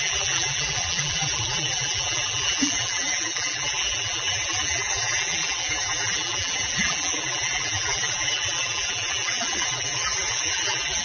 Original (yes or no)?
no